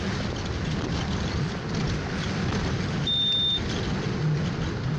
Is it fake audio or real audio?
real